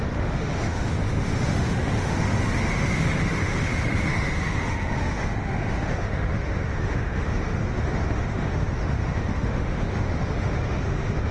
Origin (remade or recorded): remade